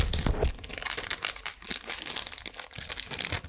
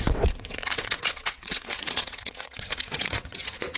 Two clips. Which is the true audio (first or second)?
first